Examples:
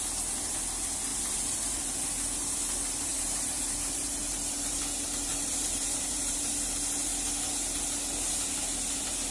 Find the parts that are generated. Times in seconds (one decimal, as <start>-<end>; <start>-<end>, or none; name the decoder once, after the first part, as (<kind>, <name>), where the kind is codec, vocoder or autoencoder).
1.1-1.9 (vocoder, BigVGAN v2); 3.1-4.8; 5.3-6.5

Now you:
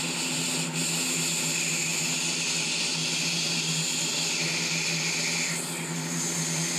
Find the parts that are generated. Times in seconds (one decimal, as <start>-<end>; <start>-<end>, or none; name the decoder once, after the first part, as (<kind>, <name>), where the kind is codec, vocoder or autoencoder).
none

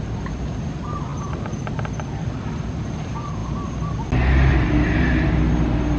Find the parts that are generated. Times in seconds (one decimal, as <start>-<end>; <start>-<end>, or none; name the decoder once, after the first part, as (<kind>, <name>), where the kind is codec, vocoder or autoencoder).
none

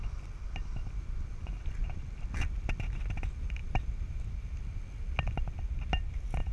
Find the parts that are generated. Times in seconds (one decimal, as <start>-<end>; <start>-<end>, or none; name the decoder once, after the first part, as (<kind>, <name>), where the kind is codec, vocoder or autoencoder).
0.8-1.3 (vocoder, BigVGAN v2); 3.6-4.6

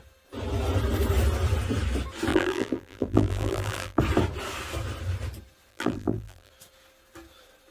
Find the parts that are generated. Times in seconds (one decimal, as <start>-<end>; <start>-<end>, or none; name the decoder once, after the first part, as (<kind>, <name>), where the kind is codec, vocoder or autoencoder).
2.3-4.0 (vocoder, BigVGAN v2); 5.7-6.5

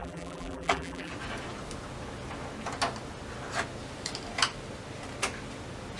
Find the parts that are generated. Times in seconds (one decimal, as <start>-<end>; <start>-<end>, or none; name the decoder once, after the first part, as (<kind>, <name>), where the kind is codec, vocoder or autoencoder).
0.0-1.1 (vocoder, BigVGAN v2)

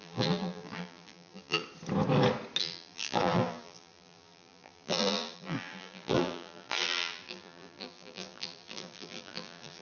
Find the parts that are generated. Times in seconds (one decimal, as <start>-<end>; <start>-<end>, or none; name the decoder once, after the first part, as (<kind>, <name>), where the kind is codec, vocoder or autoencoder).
0.0-1.6 (vocoder, BigVGAN v2); 2.6-9.8

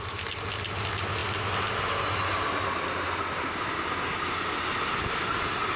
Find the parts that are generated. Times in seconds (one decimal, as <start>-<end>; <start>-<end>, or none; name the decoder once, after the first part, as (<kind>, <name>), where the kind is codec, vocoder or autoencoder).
none